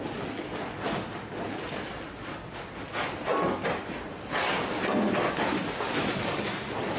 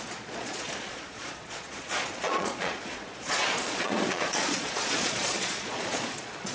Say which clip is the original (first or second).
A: first